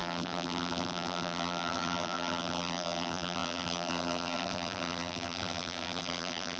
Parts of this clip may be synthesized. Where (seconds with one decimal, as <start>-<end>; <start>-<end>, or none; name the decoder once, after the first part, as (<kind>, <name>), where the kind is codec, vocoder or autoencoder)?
0.0-6.6 (vocoder, BigVGAN v2)